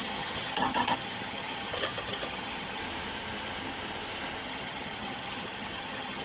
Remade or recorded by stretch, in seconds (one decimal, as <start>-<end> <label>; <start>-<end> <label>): 0.0-2.8 remade; 2.8-4.4 recorded; 4.4-6.2 remade